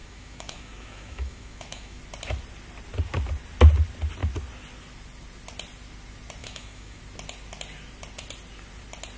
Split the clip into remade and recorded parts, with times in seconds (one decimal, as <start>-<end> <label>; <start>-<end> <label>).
0.0-2.0 remade; 2.0-6.4 recorded; 6.4-7.0 remade; 7.0-9.2 recorded